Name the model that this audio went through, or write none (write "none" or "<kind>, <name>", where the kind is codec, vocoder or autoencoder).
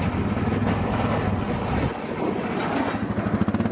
none